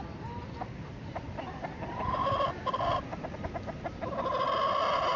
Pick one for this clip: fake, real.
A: real